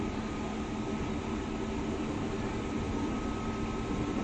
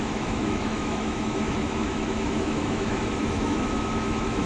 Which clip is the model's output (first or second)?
second